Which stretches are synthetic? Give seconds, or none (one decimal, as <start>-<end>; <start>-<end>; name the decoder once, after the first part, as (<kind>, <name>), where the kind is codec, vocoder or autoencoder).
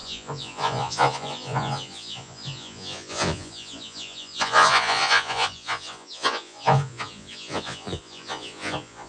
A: 0.0-9.1 (vocoder, Vocos)